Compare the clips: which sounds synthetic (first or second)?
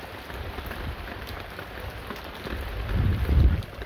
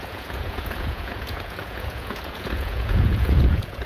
second